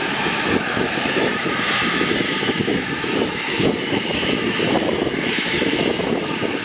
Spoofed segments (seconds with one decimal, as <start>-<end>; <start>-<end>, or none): 0.0-6.6

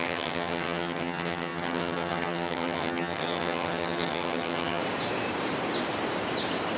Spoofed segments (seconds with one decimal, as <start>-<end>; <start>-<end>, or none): 0.0-4.8